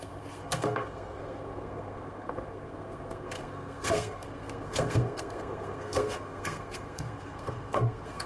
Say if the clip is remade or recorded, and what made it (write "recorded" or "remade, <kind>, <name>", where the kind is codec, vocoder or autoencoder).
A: remade, codec, SNAC